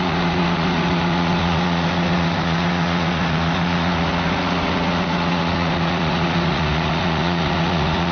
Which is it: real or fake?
fake